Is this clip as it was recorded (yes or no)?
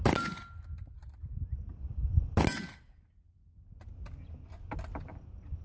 yes